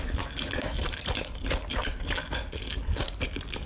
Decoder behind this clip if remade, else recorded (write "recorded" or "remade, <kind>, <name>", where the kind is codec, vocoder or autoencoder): recorded